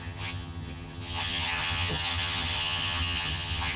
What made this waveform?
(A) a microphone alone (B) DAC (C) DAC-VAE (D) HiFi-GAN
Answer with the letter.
D